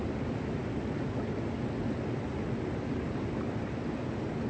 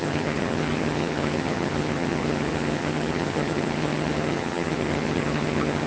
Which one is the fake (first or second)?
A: second